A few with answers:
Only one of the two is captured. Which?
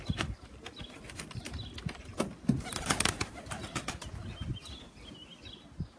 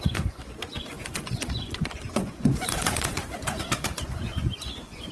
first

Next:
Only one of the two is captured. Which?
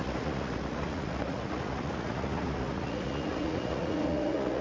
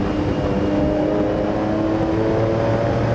second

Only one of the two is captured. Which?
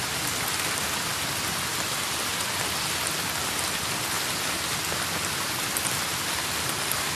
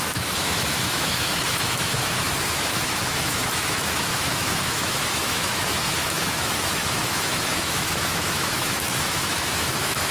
first